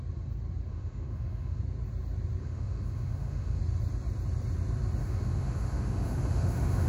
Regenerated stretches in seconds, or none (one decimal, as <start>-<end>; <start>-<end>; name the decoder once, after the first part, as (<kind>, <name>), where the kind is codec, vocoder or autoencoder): 0.7-1.6 (autoencoder, DAC-VAE); 2.4-3.6; 5.0-6.9